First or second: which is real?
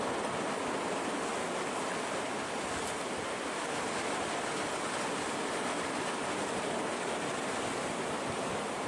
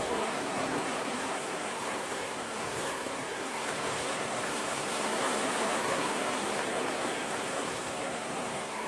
first